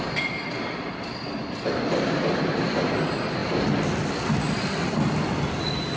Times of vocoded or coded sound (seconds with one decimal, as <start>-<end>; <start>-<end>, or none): none

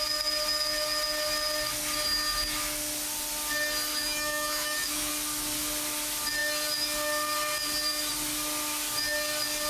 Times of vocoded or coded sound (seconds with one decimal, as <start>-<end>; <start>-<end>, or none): 3.9-5.1

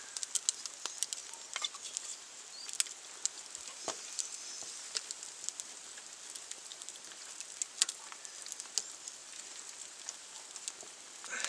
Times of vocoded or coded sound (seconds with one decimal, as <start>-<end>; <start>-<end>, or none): 9.2-10.0

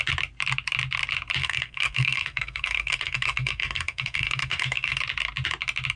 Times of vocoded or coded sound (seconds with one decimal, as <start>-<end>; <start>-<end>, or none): 1.4-5.0

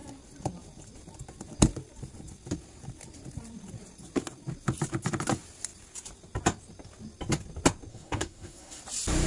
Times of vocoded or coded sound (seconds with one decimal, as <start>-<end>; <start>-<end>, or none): 7.9-8.8

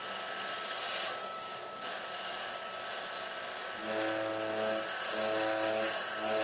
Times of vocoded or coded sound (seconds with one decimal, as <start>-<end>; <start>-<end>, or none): 1.2-2.5

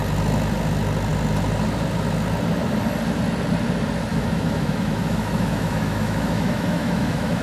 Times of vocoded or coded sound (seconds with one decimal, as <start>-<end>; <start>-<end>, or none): 4.1-7.4

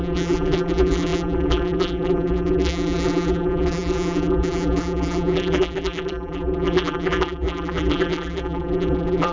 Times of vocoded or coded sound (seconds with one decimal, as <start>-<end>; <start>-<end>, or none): 0.0-9.3